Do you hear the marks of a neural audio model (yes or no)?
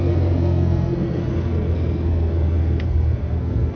yes